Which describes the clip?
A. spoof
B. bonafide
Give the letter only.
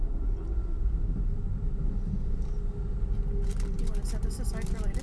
B